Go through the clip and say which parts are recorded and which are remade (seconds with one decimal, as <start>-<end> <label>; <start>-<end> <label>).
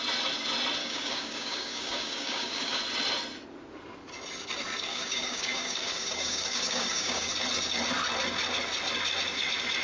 0.0-0.8 recorded; 0.8-2.8 remade; 2.8-4.9 recorded; 4.9-7.3 remade; 7.3-9.8 recorded